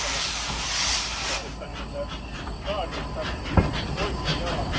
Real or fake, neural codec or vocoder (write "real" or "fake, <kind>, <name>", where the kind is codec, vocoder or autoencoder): real